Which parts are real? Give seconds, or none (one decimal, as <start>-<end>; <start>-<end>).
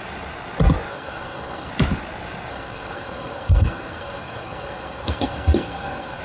0.0-0.9; 1.7-2.5